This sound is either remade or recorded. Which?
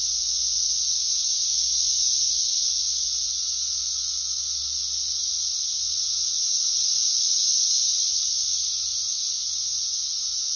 remade